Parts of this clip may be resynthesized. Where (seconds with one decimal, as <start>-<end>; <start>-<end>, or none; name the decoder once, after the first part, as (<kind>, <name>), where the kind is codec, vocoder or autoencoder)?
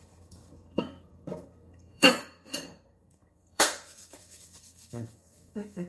0.0-5.9 (codec, SNAC)